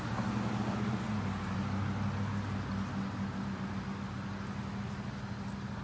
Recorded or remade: recorded